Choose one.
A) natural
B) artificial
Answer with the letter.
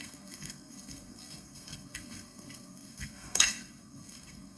B